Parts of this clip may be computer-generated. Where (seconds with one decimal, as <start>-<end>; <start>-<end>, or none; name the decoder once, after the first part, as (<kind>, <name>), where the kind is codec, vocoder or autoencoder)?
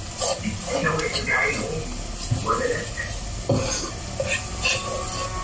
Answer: none